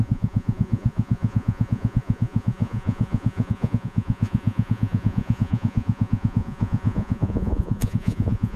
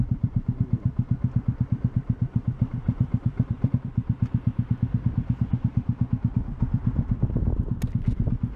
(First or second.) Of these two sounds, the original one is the second